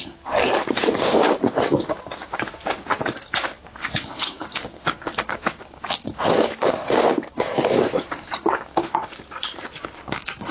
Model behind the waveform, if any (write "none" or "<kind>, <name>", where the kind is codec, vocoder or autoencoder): codec, DAC